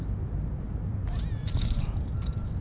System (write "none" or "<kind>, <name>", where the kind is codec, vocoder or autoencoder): none